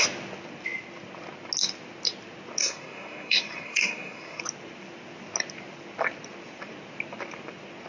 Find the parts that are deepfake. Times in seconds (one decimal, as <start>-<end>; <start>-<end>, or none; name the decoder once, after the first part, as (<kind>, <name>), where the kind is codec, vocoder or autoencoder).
2.6-4.4 (codec, SNAC)